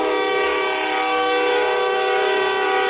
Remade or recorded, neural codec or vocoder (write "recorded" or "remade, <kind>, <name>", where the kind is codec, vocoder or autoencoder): remade, codec, DAC